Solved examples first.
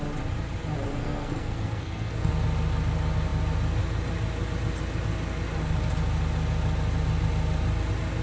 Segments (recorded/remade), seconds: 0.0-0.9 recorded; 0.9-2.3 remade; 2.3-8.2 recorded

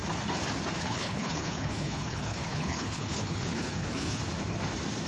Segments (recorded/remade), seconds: 0.0-0.8 recorded; 0.8-4.2 remade; 4.2-5.1 recorded